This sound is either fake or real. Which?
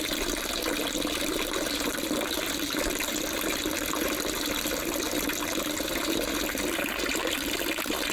real